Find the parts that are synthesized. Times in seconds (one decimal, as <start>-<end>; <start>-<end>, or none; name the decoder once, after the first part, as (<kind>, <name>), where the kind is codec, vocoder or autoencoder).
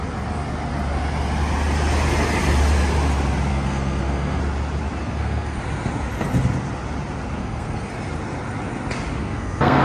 3.5-4.4 (codec, SNAC); 5.0-5.6; 7.4-7.9; 9.2-9.8